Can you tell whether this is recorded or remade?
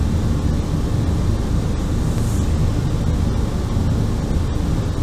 recorded